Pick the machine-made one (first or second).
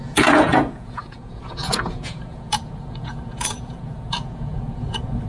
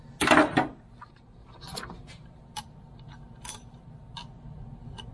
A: first